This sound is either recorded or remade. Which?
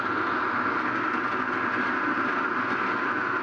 recorded